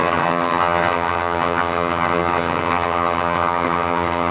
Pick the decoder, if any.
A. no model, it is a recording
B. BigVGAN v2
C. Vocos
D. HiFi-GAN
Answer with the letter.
D